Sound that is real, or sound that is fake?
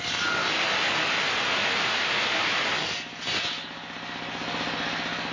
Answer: real